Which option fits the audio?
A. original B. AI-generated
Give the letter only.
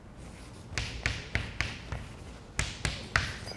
A